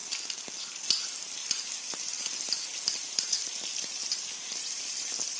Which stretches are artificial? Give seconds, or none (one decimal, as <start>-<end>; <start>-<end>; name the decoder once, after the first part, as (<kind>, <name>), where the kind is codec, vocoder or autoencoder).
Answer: none